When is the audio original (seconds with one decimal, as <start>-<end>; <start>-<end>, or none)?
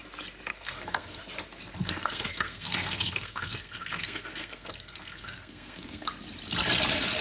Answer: 0.0-0.5; 1.2-1.8; 6.1-7.2